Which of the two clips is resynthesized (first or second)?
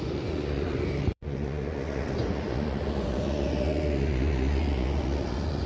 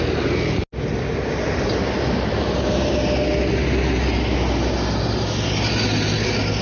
first